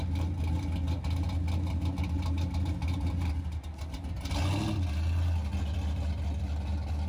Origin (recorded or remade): recorded